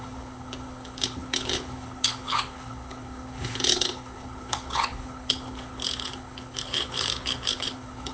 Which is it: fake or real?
fake